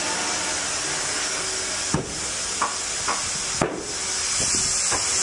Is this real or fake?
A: real